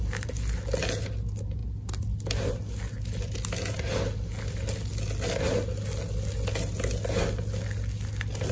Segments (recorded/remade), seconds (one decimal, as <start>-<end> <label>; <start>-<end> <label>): 0.0-8.5 recorded